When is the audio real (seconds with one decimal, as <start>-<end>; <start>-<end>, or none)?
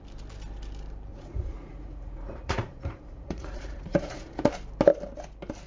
0.0-1.1; 4.5-5.7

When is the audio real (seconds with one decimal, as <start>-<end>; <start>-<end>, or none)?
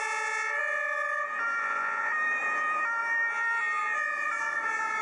0.0-1.6; 2.1-5.0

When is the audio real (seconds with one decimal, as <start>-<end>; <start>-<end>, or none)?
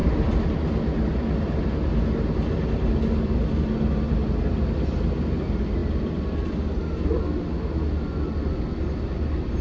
0.0-9.6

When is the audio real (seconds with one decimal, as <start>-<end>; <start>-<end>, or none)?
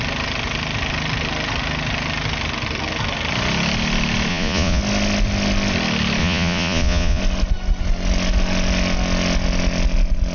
0.0-4.3; 4.8-6.2; 7.2-10.3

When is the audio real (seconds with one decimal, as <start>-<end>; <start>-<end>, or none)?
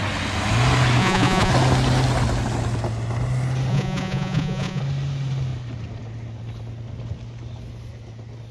0.0-1.0; 1.5-3.7; 4.8-8.5